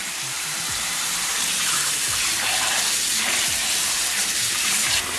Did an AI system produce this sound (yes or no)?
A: yes